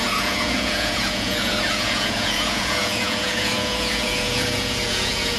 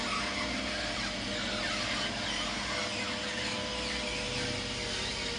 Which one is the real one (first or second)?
second